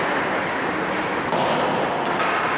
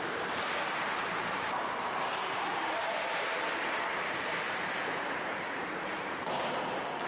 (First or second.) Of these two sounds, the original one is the first